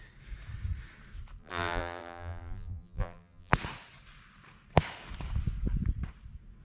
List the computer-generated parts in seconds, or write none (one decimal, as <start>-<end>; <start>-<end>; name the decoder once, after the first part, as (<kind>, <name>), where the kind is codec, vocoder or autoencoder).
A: 1.4-3.5 (vocoder, BigVGAN v2)